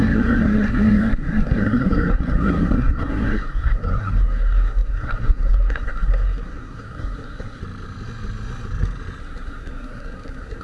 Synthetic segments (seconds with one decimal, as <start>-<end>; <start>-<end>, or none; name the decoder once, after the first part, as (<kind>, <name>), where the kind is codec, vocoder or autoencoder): 0.0-7.6 (codec, SNAC); 9.2-10.6